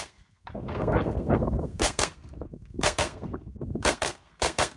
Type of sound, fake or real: fake